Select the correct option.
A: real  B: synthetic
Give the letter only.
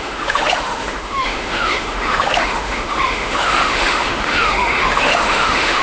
B